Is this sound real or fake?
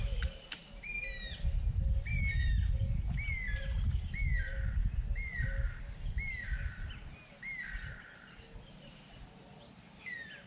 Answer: real